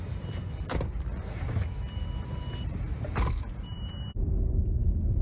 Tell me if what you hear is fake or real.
fake